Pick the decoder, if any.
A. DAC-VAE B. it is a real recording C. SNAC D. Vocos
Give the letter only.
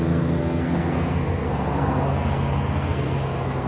C